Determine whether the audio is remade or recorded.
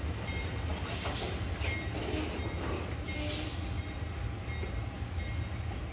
recorded